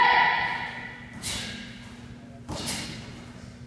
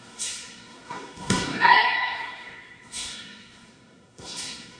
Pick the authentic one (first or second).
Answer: first